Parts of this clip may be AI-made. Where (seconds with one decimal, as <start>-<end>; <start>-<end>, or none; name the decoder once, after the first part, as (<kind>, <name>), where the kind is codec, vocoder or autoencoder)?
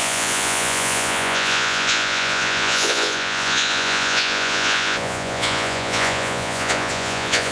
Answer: 0.0-7.5 (vocoder, Vocos)